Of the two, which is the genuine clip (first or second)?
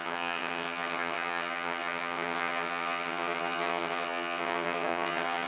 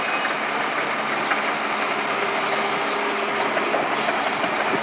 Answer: second